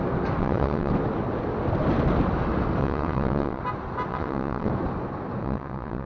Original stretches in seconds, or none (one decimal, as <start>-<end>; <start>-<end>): 0.0-0.4; 0.9-2.8; 3.6-4.1; 4.7-5.4